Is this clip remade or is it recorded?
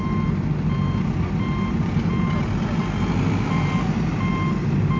recorded